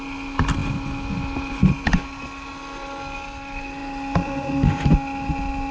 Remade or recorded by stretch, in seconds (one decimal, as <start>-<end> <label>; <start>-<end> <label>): 0.0-5.7 recorded